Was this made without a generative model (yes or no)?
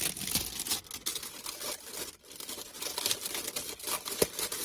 yes